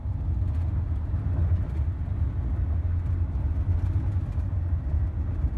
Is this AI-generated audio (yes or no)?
no